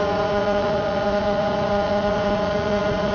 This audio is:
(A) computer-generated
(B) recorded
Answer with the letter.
A